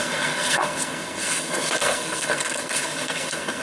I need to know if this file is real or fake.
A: fake